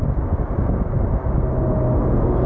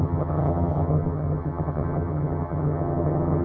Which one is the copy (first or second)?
second